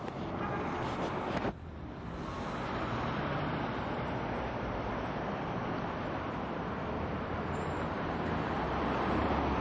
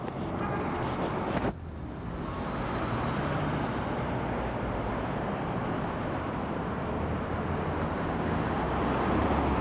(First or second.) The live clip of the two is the second